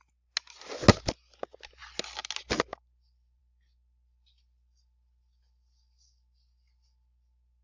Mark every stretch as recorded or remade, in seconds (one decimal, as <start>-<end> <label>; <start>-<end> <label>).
0.0-2.7 recorded; 2.7-3.4 remade; 3.4-7.6 recorded